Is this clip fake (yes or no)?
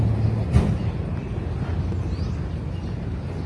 no